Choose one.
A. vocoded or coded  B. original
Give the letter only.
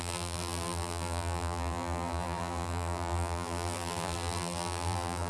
A